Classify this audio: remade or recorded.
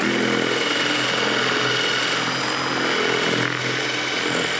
recorded